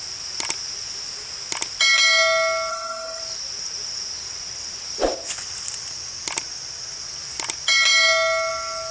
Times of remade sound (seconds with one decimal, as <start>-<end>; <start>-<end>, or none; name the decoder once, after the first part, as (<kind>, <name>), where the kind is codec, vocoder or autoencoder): 2.7-3.2 (codec, SNAC)